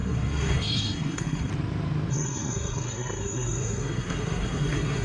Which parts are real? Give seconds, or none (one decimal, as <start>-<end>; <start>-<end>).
1.5-2.1